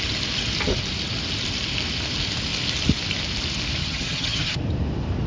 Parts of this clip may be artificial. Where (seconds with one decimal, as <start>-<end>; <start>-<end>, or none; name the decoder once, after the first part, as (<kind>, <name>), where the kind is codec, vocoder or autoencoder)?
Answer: 3.8-4.6 (vocoder, HiFi-GAN)